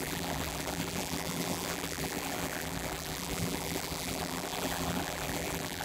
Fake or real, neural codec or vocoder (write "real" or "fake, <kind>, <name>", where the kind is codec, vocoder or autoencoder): fake, vocoder, BigVGAN v2